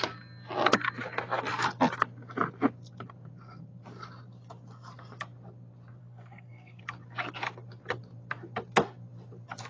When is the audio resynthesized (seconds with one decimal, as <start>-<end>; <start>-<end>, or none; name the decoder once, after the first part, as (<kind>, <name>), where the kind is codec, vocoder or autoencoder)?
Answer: 6.0-6.8 (codec, SNAC)